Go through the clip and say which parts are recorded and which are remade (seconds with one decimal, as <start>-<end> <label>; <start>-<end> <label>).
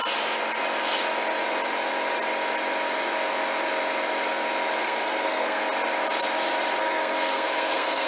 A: 0.0-4.8 recorded; 4.8-5.6 remade; 5.6-6.8 recorded; 6.8-8.1 remade